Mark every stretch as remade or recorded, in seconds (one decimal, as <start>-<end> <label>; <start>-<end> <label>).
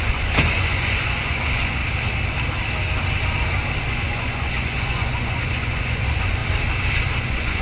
0.0-1.8 remade; 1.8-3.9 recorded; 3.9-6.4 remade; 6.4-7.0 recorded; 7.0-7.6 remade